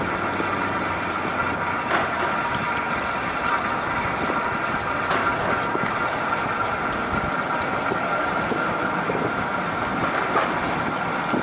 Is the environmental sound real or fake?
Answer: real